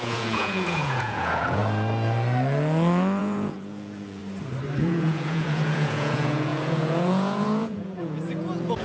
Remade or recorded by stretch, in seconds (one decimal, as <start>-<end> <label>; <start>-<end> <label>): 0.0-1.6 remade; 1.6-3.2 recorded; 3.2-4.2 remade; 4.2-4.8 recorded; 4.8-8.8 remade